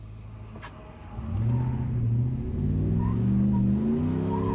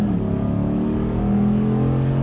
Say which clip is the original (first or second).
first